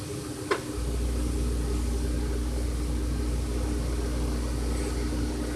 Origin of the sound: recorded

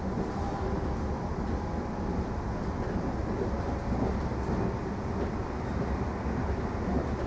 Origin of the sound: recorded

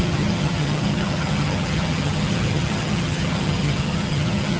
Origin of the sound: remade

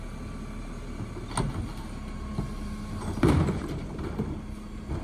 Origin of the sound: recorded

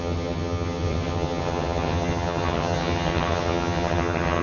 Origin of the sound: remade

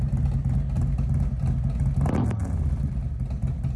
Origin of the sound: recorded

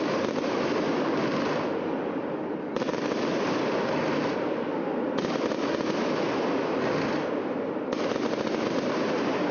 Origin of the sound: recorded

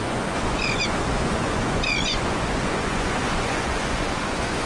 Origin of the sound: remade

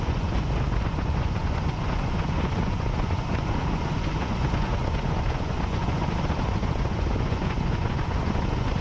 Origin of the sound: remade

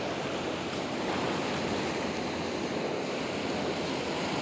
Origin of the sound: recorded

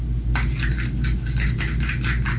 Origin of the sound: recorded